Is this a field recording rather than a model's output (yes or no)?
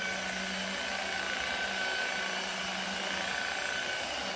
yes